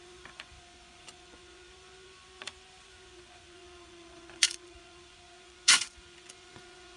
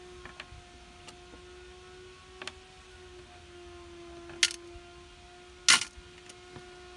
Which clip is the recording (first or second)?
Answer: second